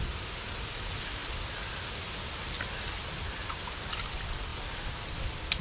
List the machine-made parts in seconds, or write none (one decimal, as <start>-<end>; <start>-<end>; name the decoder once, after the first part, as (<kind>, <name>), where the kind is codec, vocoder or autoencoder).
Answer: none